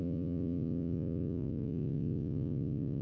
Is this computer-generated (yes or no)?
yes